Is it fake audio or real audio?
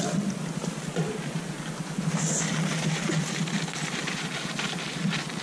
real